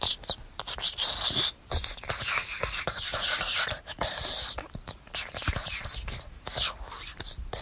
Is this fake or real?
fake